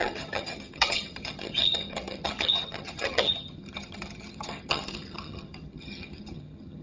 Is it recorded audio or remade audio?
remade